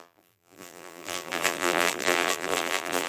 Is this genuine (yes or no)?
no